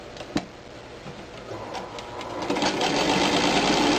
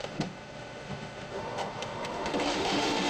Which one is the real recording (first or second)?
first